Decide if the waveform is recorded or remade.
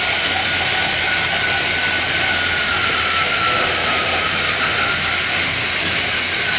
recorded